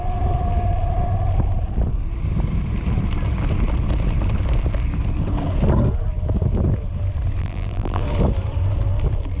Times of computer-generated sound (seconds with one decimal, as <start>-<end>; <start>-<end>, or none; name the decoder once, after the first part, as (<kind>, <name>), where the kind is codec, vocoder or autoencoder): 7.4-8.0 (vocoder, BigVGAN v2)